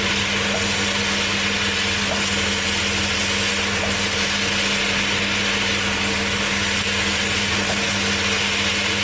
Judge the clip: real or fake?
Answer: real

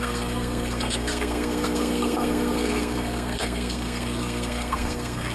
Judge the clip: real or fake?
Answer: fake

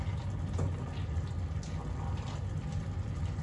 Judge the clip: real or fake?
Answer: real